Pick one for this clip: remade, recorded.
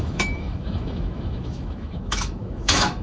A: remade